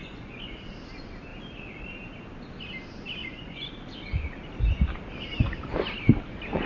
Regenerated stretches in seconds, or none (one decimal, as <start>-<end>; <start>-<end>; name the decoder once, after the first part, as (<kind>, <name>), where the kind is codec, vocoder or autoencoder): 0.0-0.5 (vocoder, Vocos); 3.2-3.7